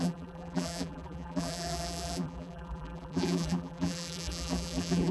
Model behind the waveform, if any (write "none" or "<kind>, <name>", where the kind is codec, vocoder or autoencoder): vocoder, BigVGAN v2